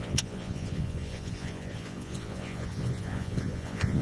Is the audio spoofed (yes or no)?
yes